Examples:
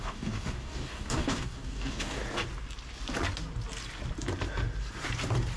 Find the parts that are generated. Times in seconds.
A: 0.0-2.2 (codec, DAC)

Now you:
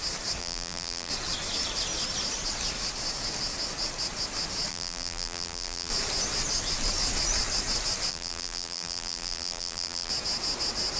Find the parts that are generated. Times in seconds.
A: 0.4-1.1 (vocoder, BigVGAN v2); 4.7-5.9; 8.1-10.1

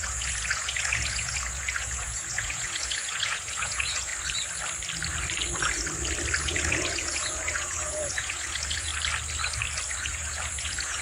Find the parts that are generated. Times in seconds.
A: 0.0-4.1 (vocoder, Vocos); 6.4-8.9; 10.0-11.0

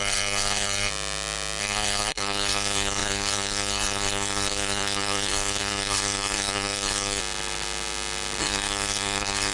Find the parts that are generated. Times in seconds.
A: 0.0-0.9 (codec, SNAC); 1.6-7.2; 8.4-9.5

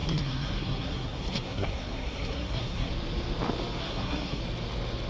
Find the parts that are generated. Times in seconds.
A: 0.0-2.9 (codec, SNAC); 3.8-4.4

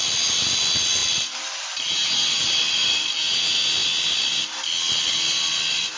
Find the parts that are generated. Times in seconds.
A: 1.0-1.6 (vocoder, BigVGAN v2); 2.0-2.9